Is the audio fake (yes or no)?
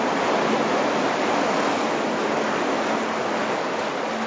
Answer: no